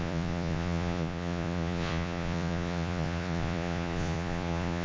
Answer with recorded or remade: remade